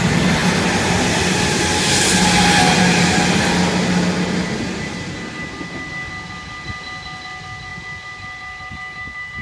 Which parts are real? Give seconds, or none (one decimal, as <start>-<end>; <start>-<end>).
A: 0.0-9.4